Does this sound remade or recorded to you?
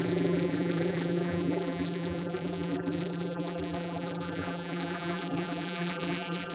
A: remade